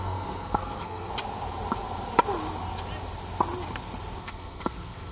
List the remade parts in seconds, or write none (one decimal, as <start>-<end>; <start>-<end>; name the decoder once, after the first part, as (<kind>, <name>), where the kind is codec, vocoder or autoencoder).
0.0-1.1 (codec, SNAC); 4.2-5.1